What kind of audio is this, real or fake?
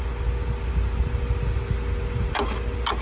real